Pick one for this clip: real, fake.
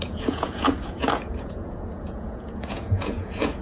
fake